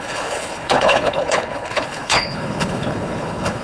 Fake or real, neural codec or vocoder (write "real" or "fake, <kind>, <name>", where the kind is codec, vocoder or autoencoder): fake, codec, HILCodec